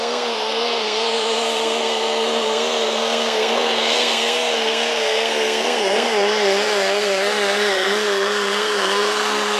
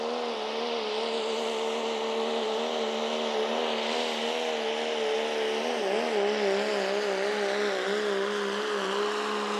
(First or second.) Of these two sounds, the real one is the second